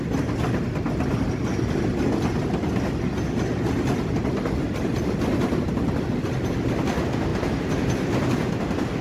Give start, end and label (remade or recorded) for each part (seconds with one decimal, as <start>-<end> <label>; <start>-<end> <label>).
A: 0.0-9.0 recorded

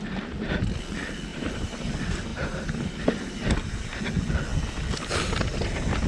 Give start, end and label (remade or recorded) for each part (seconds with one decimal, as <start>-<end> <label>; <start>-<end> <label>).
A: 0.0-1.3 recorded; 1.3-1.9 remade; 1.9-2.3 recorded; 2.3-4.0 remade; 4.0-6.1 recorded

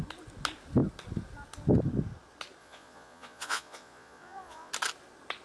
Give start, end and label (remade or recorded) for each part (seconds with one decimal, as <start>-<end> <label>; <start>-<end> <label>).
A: 0.0-2.6 recorded; 2.6-4.7 remade; 4.7-5.4 recorded

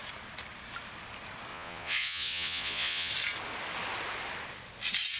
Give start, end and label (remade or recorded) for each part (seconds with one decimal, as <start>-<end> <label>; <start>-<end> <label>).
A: 0.0-1.5 recorded; 1.5-3.1 remade; 3.1-5.2 recorded